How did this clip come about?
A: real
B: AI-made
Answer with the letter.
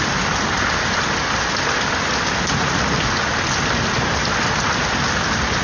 A